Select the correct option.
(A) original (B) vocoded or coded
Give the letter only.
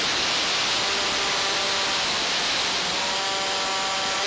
A